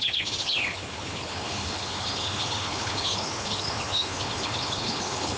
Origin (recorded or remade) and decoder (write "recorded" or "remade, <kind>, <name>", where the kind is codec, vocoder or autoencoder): remade, codec, HILCodec